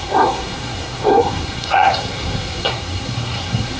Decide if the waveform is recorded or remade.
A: remade